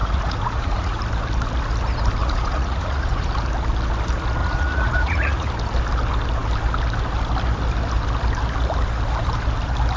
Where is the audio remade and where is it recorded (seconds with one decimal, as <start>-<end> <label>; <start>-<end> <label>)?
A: 0.0-1.0 remade; 1.0-2.2 recorded; 2.2-3.3 remade; 3.3-4.4 recorded; 4.4-5.5 remade; 5.5-10.0 recorded

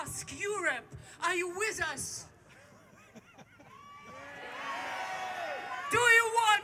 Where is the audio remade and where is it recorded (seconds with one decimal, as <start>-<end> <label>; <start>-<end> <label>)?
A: 0.0-6.6 recorded

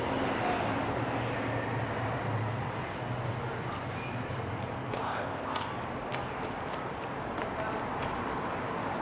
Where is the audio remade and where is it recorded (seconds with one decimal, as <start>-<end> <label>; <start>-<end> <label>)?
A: 0.0-5.0 recorded; 5.0-5.7 remade; 5.7-9.0 recorded

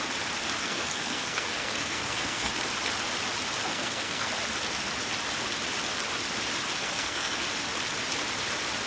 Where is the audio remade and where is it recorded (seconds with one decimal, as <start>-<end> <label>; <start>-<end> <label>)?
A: 0.0-0.6 recorded; 0.6-2.5 remade; 2.5-3.7 recorded; 3.7-4.3 remade; 4.3-6.8 recorded; 6.8-7.4 remade; 7.4-8.9 recorded